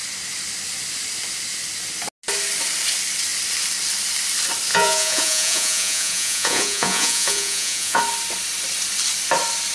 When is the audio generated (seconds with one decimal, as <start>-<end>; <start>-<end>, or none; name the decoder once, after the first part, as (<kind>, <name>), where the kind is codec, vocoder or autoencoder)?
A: 4.7-8.0 (vocoder, Vocos)